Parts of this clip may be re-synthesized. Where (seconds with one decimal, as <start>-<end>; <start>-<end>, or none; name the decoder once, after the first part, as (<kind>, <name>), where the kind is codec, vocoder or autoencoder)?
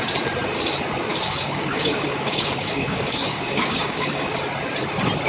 1.1-4.3 (codec, DAC)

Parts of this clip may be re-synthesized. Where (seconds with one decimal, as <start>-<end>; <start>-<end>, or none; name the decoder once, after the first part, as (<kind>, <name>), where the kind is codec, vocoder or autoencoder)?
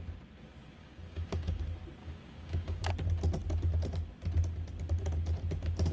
0.8-1.6 (codec, DAC); 2.0-2.9